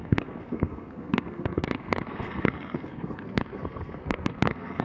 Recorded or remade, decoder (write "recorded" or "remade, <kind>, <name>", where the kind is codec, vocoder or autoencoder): remade, codec, SNAC